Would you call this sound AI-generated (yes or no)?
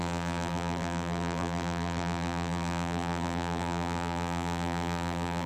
yes